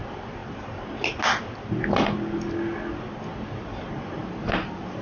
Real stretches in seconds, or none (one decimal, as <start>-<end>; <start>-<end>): 0.0-5.0